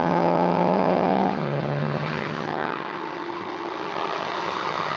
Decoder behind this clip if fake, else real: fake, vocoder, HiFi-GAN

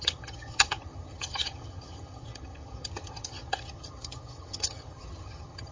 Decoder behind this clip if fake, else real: fake, vocoder, HiFi-GAN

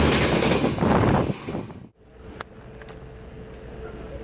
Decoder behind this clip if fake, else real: real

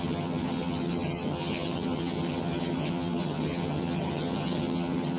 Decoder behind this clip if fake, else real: fake, vocoder, HiFi-GAN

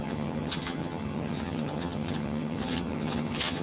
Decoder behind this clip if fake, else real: fake, vocoder, HiFi-GAN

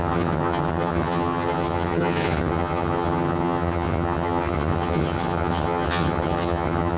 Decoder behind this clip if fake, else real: fake, vocoder, HiFi-GAN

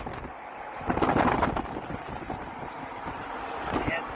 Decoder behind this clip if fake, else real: real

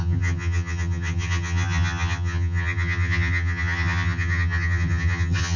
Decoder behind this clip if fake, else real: fake, vocoder, HiFi-GAN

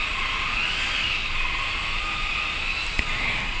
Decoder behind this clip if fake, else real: real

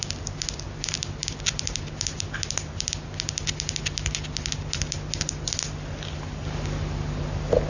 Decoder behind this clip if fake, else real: real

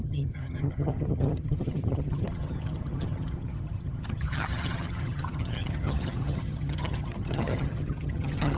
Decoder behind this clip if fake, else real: fake, vocoder, HiFi-GAN